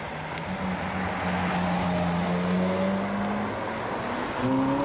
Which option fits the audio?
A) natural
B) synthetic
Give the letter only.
A